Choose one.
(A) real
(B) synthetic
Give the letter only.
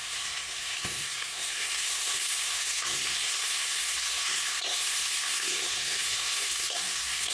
B